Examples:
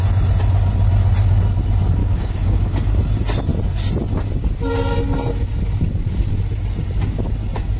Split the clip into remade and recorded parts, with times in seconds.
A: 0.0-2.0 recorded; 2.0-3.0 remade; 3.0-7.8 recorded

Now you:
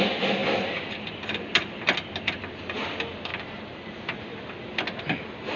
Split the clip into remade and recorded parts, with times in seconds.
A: 0.0-5.6 remade